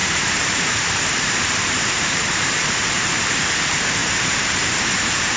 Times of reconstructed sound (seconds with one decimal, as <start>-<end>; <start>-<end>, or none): 0.0-3.2; 4.0-4.6